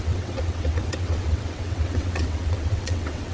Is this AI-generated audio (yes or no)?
yes